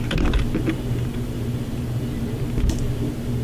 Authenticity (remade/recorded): recorded